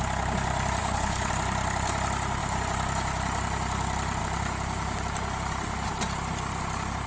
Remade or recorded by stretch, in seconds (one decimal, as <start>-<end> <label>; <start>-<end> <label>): 0.0-0.8 recorded; 0.8-1.3 remade; 1.3-7.1 recorded